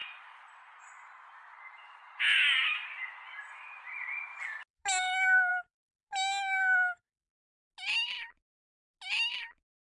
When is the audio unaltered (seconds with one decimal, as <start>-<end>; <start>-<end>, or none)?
4.2-9.9